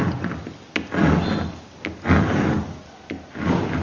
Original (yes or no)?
yes